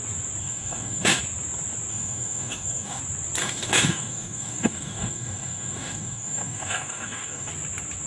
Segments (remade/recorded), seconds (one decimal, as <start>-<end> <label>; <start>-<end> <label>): 0.0-0.4 recorded; 0.4-1.2 remade; 1.2-1.9 recorded; 1.9-3.0 remade; 3.0-3.4 recorded; 3.4-7.5 remade; 7.5-8.1 recorded